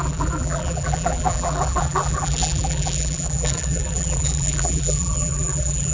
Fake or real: fake